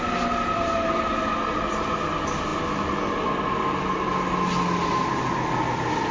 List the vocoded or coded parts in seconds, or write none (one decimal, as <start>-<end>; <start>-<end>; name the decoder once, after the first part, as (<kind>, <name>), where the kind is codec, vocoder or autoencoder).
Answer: none

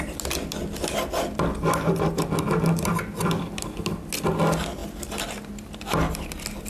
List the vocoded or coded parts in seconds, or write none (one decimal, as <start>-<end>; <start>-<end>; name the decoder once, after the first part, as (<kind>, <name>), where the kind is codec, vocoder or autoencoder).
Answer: none